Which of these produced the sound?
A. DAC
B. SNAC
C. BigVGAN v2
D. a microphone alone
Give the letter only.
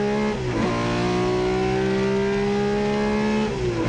D